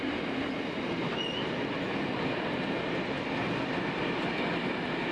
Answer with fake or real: real